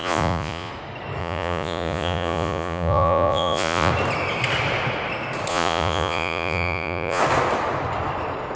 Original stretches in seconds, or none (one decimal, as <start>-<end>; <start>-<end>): 0.7-1.2; 3.9-5.5; 7.2-8.6